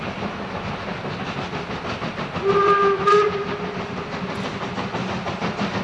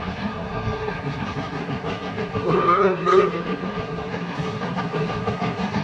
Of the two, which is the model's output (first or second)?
second